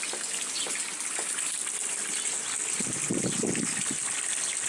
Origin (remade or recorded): recorded